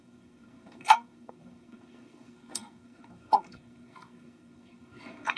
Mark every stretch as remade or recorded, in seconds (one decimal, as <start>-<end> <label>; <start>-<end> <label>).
0.0-5.4 remade